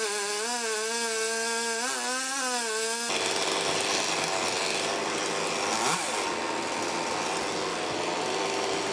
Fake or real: real